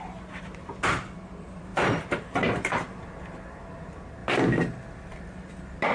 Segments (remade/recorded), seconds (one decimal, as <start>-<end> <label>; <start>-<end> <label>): 0.0-5.9 recorded